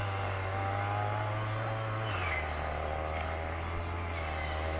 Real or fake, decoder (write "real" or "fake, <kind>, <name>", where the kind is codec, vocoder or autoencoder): real